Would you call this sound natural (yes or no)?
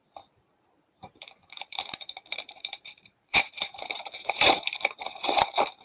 no